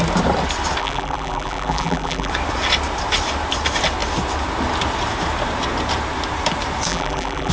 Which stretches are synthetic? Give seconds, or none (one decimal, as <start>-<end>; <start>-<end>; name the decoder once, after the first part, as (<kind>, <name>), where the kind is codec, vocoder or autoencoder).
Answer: 0.8-2.3 (vocoder, BigVGAN v2); 6.9-7.5

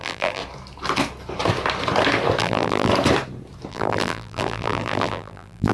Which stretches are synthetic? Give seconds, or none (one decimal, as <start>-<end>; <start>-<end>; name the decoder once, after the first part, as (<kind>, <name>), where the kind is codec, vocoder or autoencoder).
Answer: 0.0-0.4 (vocoder, BigVGAN v2); 2.4-2.9; 3.7-5.7

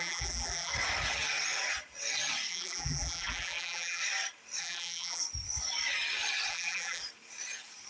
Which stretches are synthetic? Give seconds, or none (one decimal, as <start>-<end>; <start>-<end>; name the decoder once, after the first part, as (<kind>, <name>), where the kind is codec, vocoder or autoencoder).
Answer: 0.0-0.7 (vocoder, BigVGAN v2); 2.5-4.0; 4.6-5.2; 6.5-7.0